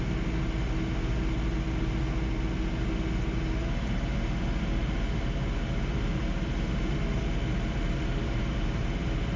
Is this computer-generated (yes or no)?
no